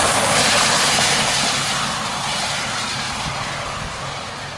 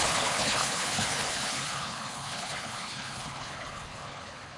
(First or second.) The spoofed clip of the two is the second